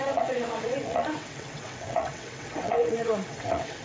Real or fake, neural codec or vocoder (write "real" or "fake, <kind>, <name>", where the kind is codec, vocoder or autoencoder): fake, vocoder, WaveNeXt